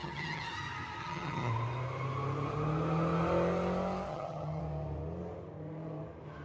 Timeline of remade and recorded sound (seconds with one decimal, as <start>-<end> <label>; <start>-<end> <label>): 0.0-0.5 remade; 0.5-1.0 recorded; 1.0-1.5 remade; 1.5-4.1 recorded; 4.1-4.6 remade; 4.6-6.4 recorded